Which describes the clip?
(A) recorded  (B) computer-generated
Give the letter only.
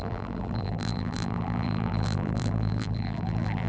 B